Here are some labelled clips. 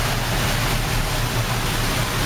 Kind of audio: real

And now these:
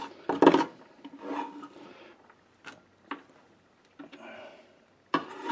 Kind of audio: real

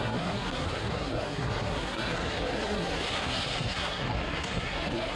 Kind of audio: fake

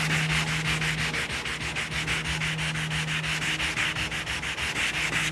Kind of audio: real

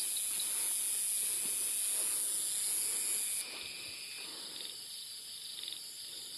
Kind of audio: real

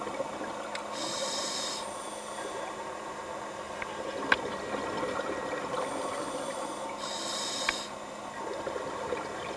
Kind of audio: real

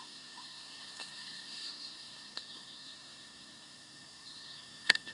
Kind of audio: fake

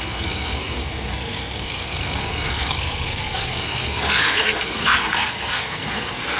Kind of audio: fake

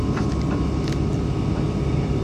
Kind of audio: real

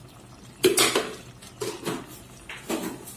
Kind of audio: real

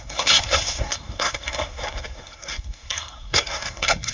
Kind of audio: fake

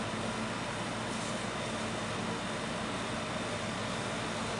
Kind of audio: real